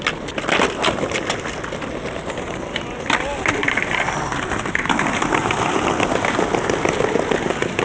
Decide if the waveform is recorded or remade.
recorded